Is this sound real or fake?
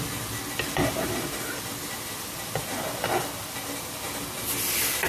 real